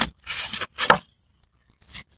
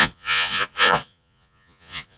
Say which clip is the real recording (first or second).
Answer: first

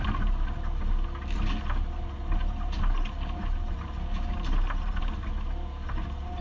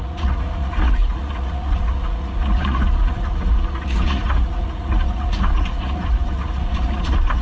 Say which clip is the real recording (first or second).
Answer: first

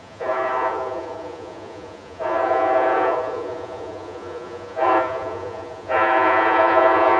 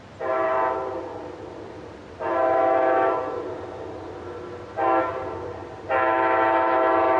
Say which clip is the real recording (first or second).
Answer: second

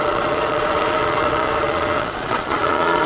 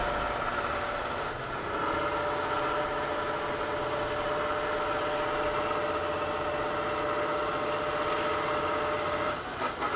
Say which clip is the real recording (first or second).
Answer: second